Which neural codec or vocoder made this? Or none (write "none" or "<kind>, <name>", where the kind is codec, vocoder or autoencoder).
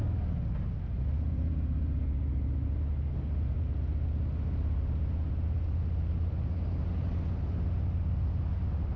none